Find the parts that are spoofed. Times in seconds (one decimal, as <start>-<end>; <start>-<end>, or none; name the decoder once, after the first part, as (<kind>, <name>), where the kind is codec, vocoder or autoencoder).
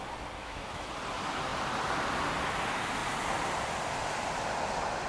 0.4-0.9 (autoencoder, DAC-VAE)